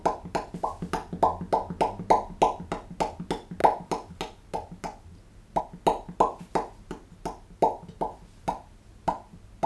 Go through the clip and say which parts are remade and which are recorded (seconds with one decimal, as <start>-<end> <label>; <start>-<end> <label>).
0.0-9.7 recorded